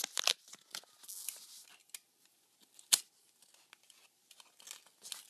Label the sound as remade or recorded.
recorded